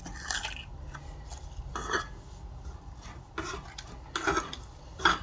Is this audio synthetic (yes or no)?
no